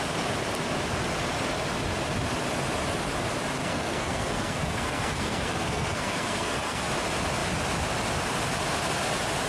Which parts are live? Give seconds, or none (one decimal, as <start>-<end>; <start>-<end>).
0.0-3.6; 6.9-9.5